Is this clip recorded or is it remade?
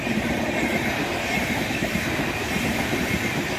remade